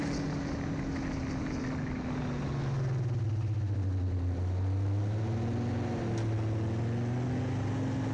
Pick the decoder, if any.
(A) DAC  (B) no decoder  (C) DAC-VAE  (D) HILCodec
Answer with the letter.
B